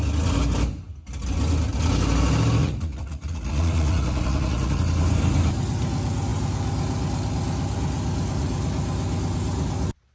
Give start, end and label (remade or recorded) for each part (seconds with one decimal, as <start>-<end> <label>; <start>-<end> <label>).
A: 0.0-2.6 recorded; 2.6-4.8 remade; 4.8-10.1 recorded